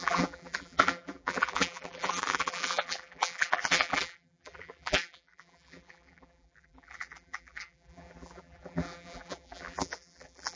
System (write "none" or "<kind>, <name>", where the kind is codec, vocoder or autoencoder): vocoder, BigVGAN v2